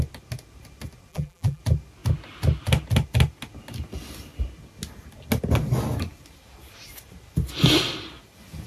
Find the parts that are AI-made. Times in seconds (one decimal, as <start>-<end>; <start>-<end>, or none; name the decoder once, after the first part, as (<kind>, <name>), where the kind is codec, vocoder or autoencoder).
1.1-1.6 (vocoder, BigVGAN v2)